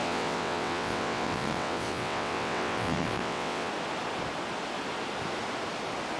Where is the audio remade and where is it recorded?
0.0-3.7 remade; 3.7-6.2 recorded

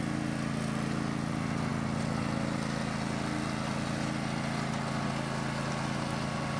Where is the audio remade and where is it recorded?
0.0-6.6 recorded

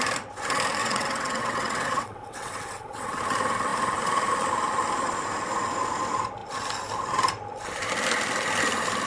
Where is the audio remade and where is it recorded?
0.0-0.8 recorded; 0.8-3.2 remade; 3.2-9.1 recorded

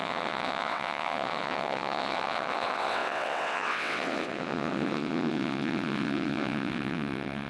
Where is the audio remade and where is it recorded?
0.0-7.5 remade

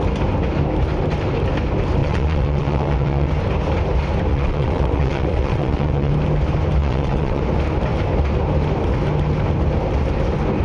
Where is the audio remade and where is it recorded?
0.0-2.0 recorded; 2.0-3.3 remade; 3.3-4.3 recorded; 4.3-6.1 remade; 6.1-6.8 recorded; 6.8-7.4 remade; 7.4-10.6 recorded

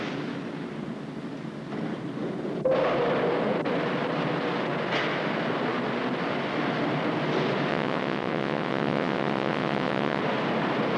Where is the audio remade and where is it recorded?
0.0-7.7 recorded; 7.7-10.2 remade; 10.2-11.0 recorded

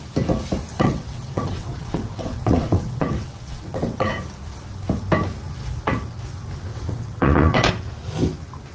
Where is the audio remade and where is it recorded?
0.0-0.7 recorded; 0.7-4.1 remade; 4.1-6.7 recorded; 6.7-7.7 remade; 7.7-8.7 recorded

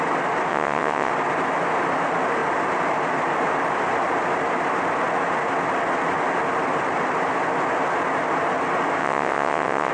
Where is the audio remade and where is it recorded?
0.0-0.5 recorded; 0.5-1.1 remade; 1.1-9.0 recorded; 9.0-9.9 remade